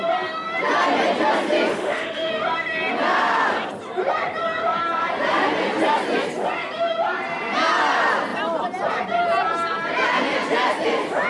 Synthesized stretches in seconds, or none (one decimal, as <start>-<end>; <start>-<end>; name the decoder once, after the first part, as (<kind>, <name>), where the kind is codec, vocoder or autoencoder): 1.7-2.3 (autoencoder, DAC-VAE)